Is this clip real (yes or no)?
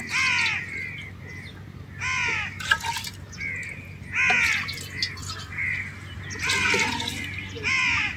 yes